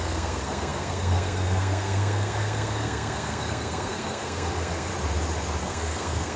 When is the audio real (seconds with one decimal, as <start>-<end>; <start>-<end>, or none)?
4.9-5.6